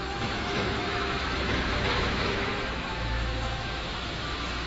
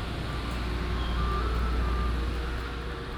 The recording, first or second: second